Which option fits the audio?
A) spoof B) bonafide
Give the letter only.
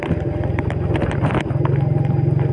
B